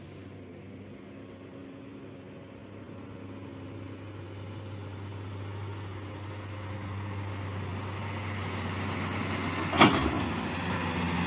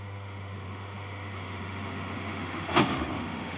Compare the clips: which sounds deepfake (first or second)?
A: second